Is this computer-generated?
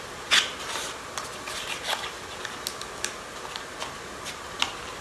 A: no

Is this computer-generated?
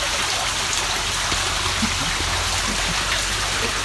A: no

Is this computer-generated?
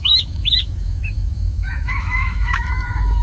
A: yes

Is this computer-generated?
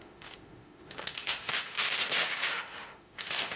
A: yes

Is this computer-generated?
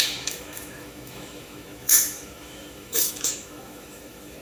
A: yes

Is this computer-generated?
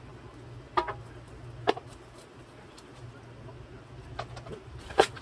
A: no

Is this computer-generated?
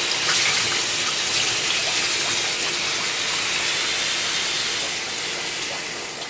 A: no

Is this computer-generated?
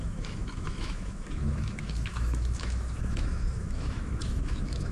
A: yes